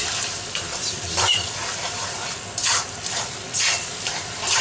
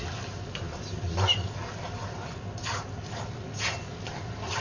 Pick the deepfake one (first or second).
first